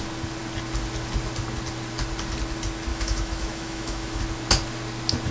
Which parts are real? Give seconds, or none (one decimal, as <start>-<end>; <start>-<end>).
0.0-2.9; 4.2-5.3